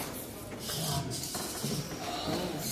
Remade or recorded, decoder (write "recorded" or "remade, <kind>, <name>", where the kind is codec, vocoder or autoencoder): recorded